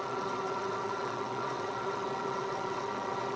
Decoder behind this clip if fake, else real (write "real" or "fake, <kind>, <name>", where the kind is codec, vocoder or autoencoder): fake, vocoder, WaveNeXt